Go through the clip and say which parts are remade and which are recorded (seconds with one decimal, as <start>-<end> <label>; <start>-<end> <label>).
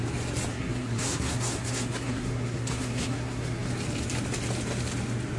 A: 0.0-0.5 recorded; 0.5-3.7 remade; 3.7-5.4 recorded